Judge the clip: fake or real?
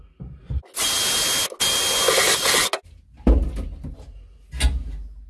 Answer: real